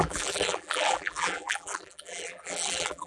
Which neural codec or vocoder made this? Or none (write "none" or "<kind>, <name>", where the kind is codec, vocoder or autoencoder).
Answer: vocoder, BigVGAN v2